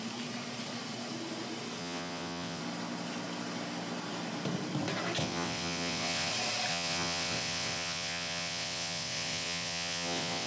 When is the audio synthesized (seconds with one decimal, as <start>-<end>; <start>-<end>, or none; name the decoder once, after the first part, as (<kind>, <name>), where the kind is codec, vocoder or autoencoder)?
1.8-2.6 (vocoder, WaveNeXt); 5.2-6.3; 6.7-10.5